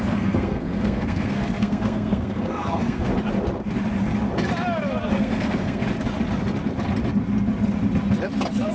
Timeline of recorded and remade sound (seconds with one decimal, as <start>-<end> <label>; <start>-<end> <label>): 0.0-3.1 remade; 3.1-5.1 recorded; 5.1-5.8 remade; 5.8-8.7 recorded